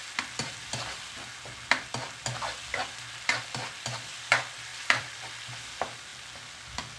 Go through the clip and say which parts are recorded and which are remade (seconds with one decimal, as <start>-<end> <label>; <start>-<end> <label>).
0.0-4.7 recorded; 4.7-5.4 remade; 5.4-7.0 recorded